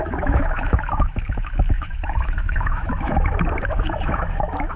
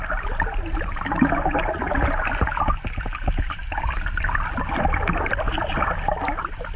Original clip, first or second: second